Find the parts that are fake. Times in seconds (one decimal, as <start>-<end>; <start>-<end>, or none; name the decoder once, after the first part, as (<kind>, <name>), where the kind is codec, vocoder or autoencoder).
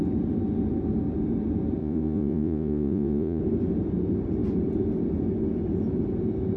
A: 1.8-3.4 (vocoder, Vocos)